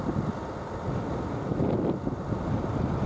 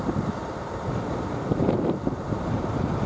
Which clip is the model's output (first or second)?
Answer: second